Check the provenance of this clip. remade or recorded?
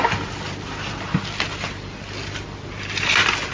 recorded